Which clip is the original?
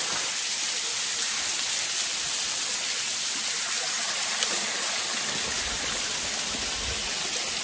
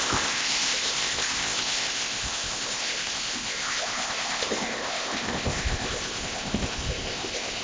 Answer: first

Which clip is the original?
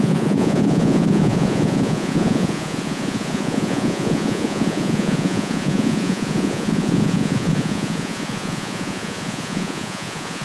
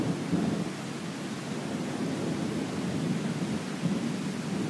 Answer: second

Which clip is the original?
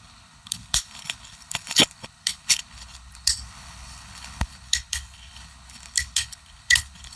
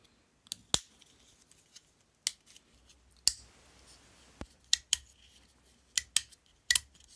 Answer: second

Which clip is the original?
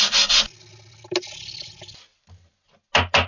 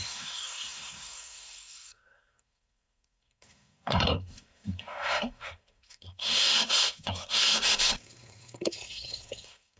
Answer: first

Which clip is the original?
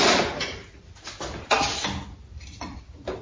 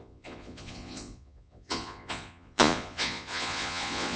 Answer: first